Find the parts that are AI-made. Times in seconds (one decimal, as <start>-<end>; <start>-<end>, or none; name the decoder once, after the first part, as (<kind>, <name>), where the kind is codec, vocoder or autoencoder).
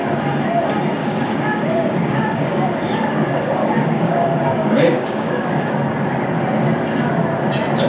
1.0-5.7 (codec, DAC)